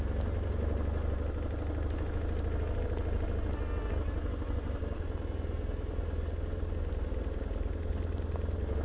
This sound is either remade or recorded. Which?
recorded